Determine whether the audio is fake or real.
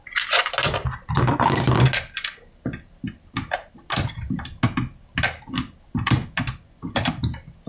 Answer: real